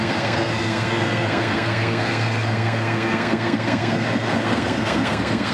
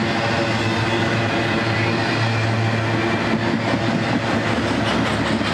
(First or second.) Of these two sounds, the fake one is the first